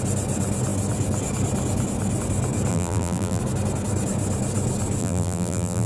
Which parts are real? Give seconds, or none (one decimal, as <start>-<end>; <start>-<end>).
0.0-2.7; 3.4-5.0